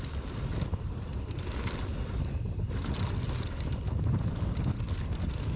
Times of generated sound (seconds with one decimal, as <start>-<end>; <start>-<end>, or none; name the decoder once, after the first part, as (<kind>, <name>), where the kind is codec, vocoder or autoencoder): 1.9-4.0 (vocoder, BigVGAN v2)